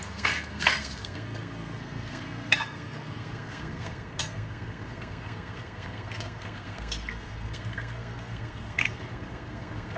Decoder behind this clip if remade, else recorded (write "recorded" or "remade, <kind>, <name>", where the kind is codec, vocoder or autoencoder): remade, codec, SNAC